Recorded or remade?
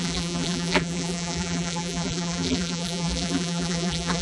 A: remade